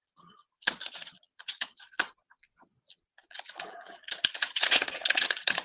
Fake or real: fake